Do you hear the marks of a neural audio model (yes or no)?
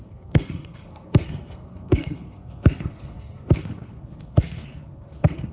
yes